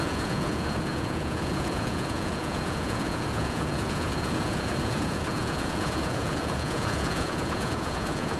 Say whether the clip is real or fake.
fake